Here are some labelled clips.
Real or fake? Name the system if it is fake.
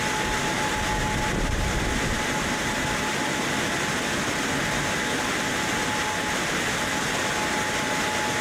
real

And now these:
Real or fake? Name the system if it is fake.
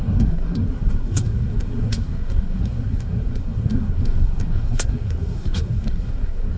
fake, codec, SNAC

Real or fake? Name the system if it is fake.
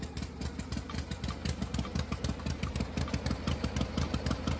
real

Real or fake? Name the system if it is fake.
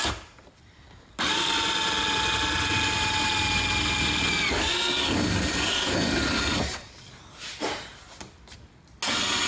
real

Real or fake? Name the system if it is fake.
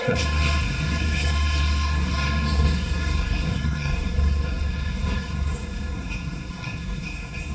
fake, codec, SNAC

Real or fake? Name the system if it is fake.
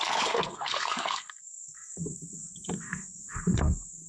fake, codec, SNAC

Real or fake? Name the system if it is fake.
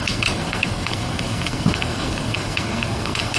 fake, codec, SNAC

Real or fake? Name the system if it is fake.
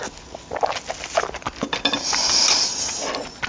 real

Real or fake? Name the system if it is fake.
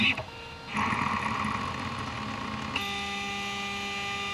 real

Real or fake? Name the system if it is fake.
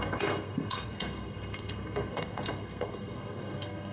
fake, codec, SNAC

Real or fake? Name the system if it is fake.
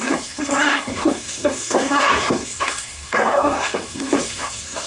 fake, codec, SNAC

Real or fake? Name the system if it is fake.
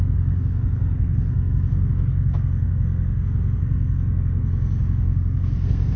fake, codec, SNAC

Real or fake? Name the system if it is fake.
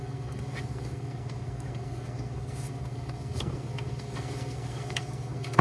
fake, codec, SNAC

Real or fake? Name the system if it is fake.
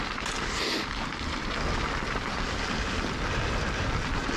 real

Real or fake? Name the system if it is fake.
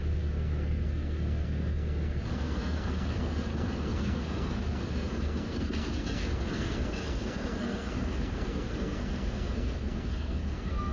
fake, codec, SNAC